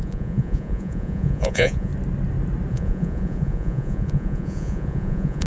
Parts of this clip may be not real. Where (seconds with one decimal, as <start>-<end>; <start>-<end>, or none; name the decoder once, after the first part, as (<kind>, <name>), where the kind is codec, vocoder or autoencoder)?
0.0-1.9 (vocoder, Vocos); 2.7-5.5